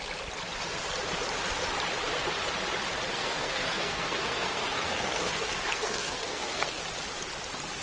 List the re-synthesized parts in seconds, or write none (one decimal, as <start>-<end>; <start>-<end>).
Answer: 3.1-6.8